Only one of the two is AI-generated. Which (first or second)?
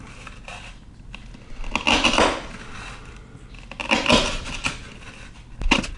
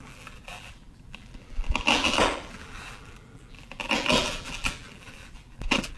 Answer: second